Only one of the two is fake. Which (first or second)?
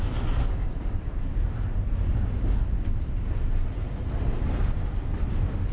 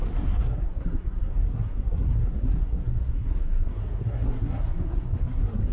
second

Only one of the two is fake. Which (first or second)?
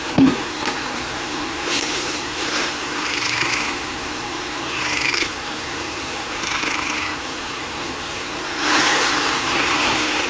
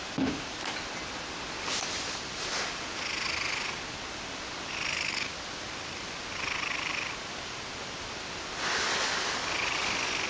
first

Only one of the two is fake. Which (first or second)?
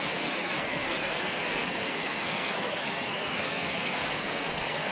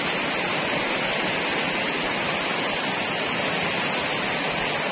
first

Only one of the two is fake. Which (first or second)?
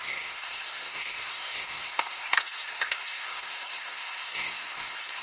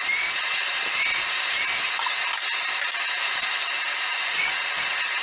first